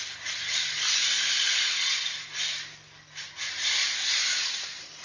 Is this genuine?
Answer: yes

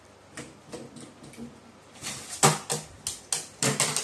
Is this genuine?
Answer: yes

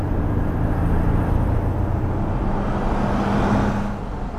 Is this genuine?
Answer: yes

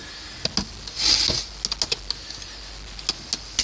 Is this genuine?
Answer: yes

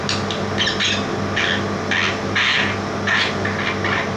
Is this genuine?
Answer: yes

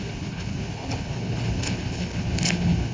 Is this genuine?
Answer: no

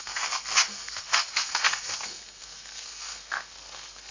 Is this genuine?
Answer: no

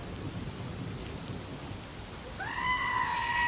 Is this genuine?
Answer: yes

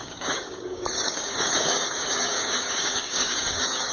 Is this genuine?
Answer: no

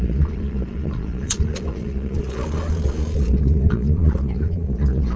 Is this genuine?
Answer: no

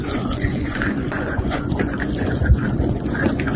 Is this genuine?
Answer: no